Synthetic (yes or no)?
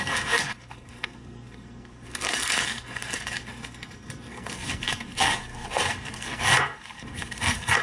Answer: yes